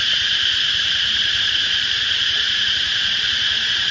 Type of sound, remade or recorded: remade